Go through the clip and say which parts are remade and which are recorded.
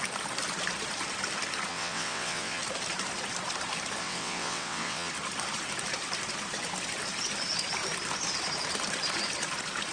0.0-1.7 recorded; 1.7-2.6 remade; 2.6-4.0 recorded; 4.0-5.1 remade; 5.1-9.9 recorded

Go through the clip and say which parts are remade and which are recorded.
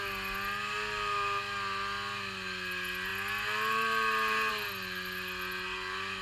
0.0-6.2 recorded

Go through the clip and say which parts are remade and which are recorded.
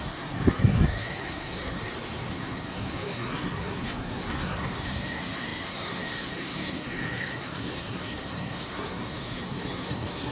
0.0-1.8 remade; 1.8-2.3 recorded; 2.3-10.3 remade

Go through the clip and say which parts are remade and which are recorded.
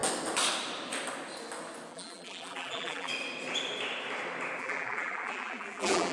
0.0-1.9 recorded; 1.9-3.1 remade; 3.1-4.6 recorded; 4.6-6.1 remade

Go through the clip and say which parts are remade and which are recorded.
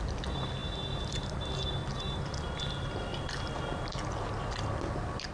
0.0-0.6 recorded; 0.6-1.3 remade; 1.3-5.3 recorded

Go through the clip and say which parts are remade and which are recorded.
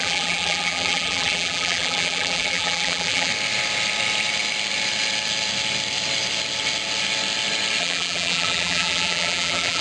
0.0-3.3 remade; 3.3-7.8 recorded; 7.8-9.8 remade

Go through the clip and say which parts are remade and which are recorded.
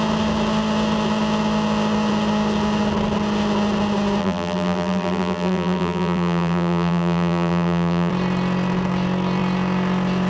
0.0-4.2 recorded; 4.2-8.1 remade; 8.1-10.3 recorded